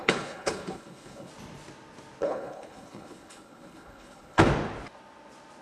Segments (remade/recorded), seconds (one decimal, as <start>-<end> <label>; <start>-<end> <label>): 0.0-1.3 remade; 1.3-2.2 recorded; 2.2-4.4 remade; 4.4-5.6 recorded